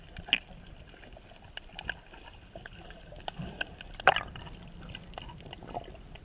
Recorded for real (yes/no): yes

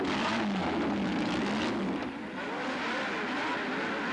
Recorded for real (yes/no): yes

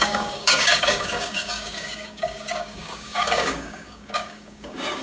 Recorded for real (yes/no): no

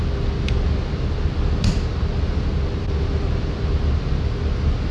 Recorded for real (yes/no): yes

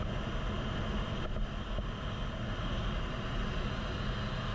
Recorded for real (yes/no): yes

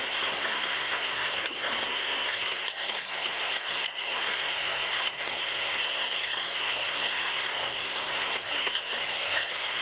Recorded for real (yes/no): no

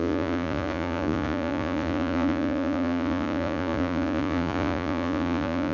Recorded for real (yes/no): no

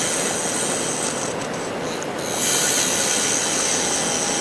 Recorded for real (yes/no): yes